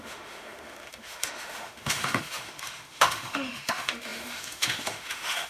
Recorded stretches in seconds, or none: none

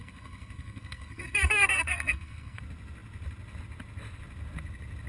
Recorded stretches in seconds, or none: 2.6-5.1

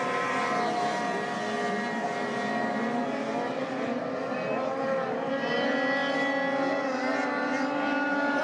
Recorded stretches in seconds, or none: 0.0-8.4

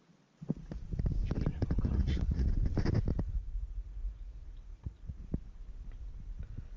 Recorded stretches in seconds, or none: 0.0-1.5; 2.5-3.1; 5.2-6.8